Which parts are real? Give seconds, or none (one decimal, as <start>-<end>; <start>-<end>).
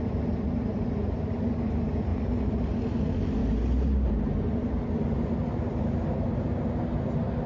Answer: 0.0-7.5